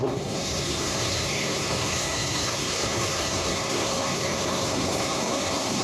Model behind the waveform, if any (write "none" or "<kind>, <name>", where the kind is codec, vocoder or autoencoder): codec, SNAC